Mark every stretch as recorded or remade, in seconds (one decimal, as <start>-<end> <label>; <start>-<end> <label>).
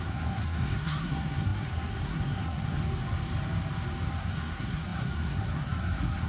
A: 0.0-2.8 remade; 2.8-4.1 recorded; 4.1-6.3 remade